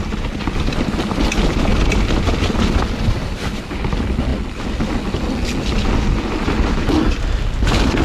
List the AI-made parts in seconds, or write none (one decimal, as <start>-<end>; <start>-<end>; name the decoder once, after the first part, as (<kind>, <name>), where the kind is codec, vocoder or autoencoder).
none